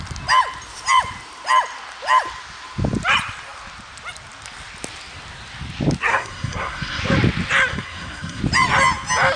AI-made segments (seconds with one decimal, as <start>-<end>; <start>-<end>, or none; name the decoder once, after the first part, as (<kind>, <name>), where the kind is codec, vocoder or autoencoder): 6.1-7.0 (codec, SNAC); 7.7-8.4